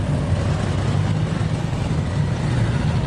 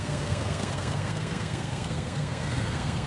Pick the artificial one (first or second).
second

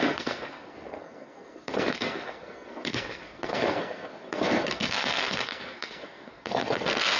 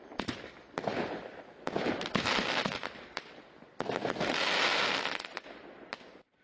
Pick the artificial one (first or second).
first